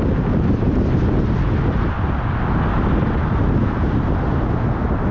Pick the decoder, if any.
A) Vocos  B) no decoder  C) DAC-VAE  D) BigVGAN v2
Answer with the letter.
B